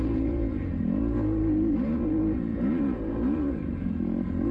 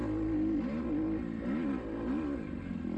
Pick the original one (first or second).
second